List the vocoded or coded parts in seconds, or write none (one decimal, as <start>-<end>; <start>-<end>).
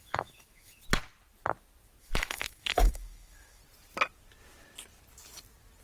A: 0.0-0.8; 2.0-3.6